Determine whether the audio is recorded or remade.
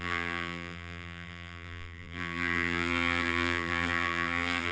remade